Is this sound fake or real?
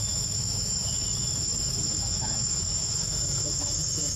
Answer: fake